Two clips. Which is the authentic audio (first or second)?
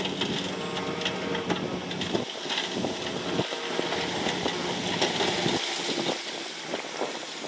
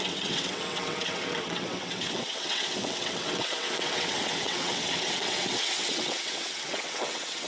first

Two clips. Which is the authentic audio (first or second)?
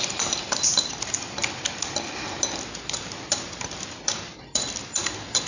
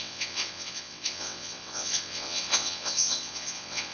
first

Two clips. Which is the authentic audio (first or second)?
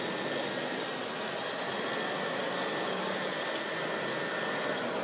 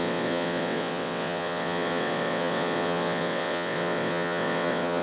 first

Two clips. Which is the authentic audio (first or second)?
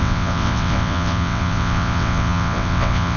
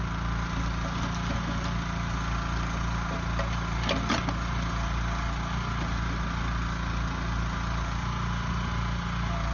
second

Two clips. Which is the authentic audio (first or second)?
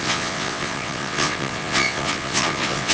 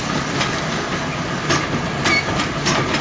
second